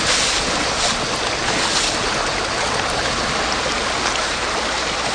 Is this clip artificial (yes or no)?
no